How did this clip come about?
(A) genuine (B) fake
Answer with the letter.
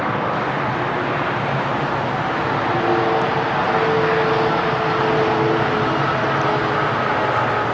A